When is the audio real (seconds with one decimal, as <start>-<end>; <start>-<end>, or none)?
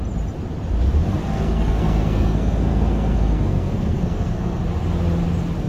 0.0-1.2; 4.6-5.7